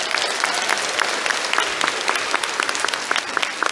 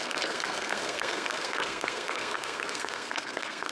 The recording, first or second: first